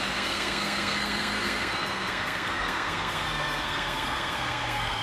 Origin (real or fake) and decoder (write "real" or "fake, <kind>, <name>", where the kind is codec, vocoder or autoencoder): fake, codec, SNAC